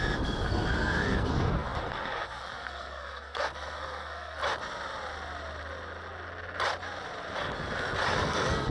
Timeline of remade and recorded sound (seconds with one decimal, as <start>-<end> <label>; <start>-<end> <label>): 0.0-4.4 remade; 4.4-8.2 recorded; 8.2-8.7 remade